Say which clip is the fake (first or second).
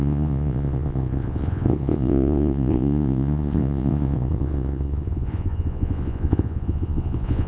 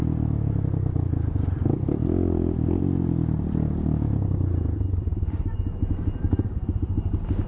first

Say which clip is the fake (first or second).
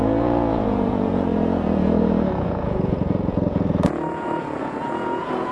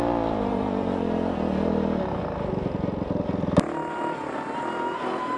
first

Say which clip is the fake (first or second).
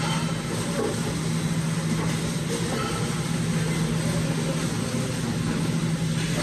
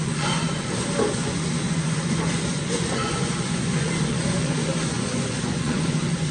second